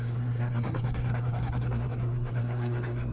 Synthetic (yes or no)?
yes